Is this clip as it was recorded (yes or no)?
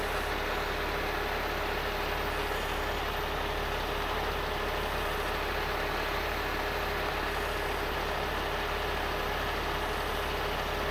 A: yes